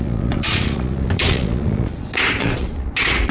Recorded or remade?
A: remade